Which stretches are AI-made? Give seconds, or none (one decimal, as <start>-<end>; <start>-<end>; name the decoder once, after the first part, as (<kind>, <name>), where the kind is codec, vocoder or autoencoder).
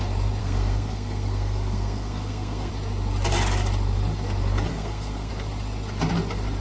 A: 0.4-2.7 (codec, SNAC); 4.7-5.3